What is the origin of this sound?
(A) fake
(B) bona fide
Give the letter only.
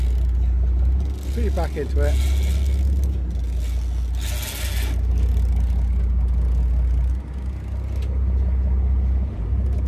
B